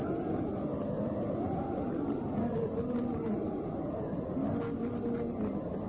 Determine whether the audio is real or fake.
real